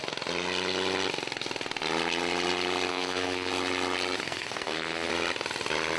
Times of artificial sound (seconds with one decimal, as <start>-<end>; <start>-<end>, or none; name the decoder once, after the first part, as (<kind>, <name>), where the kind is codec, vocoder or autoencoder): 2.9-3.5 (codec, SNAC); 4.2-5.1